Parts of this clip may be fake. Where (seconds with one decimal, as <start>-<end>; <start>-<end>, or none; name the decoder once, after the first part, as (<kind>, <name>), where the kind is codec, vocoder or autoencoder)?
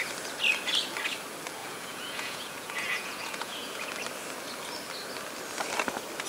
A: 1.6-3.9 (vocoder, Vocos)